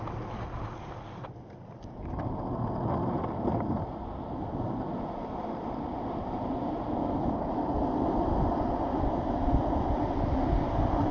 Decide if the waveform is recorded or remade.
recorded